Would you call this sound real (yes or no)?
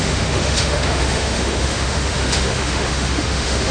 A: no